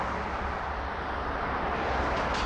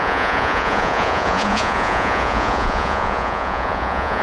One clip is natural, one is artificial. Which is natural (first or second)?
first